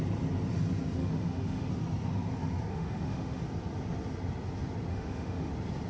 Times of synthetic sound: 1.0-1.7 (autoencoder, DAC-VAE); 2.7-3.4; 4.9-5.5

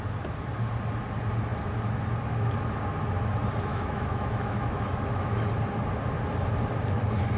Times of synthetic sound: 3.7-5.5 (autoencoder, DAC-VAE)

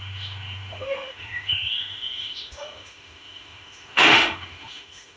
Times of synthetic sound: 0.0-5.2 (autoencoder, DAC-VAE)

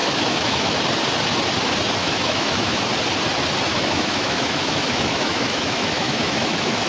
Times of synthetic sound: 0.0-0.8 (autoencoder, DAC-VAE); 2.0-2.8; 3.7-6.9

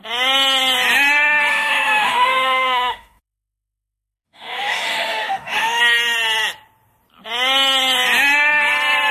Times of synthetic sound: 1.5-5.8 (autoencoder, DAC-VAE)

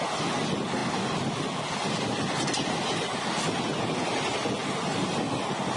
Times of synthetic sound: none

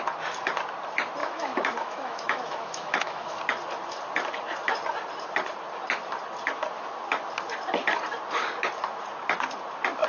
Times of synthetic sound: 1.2-3.4 (autoencoder, DAC-VAE)